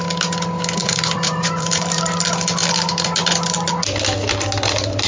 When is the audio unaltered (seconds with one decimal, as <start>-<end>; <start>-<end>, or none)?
0.0-0.8; 2.0-5.1